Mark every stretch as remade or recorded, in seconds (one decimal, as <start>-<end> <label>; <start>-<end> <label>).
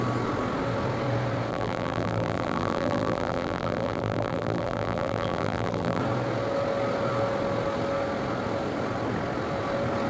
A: 0.0-1.5 recorded; 1.5-6.0 remade; 6.0-10.1 recorded